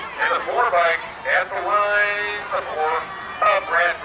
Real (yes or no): yes